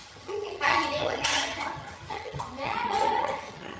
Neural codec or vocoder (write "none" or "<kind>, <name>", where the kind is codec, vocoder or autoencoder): vocoder, HiFi-GAN